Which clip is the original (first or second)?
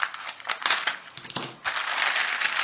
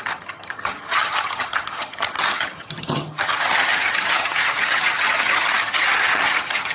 first